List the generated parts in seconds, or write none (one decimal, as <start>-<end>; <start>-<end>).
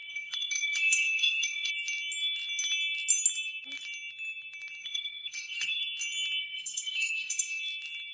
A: 0.0-1.7; 4.8-5.8; 6.4-7.6